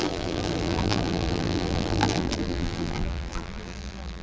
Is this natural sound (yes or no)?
no